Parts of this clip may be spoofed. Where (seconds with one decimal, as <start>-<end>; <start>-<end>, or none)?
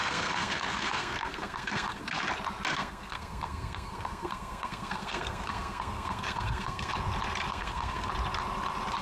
0.0-2.2; 2.7-6.9; 7.5-8.1